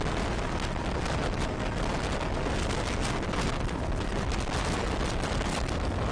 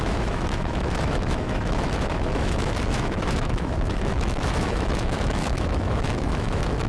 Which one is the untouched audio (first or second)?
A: first